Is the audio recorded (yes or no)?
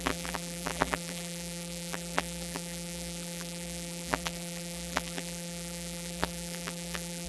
no